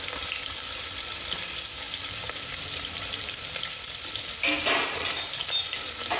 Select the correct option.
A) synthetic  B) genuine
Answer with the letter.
B